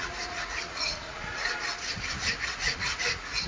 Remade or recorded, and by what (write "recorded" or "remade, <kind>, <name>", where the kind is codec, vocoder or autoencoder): remade, vocoder, Vocos